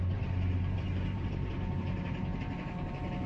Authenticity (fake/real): fake